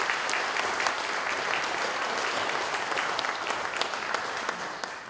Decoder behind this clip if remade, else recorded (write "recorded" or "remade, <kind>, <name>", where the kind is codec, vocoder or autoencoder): recorded